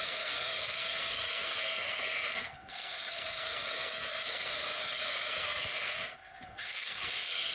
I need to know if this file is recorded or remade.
remade